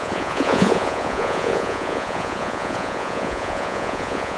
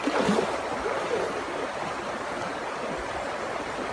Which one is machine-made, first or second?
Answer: first